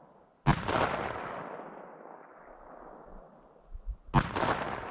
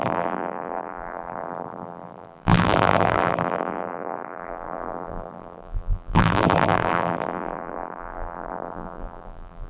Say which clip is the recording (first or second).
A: first